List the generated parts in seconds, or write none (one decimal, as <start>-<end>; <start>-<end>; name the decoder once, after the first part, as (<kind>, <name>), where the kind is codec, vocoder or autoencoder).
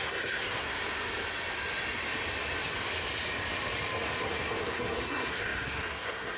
0.0-0.8 (codec, SNAC); 4.6-6.4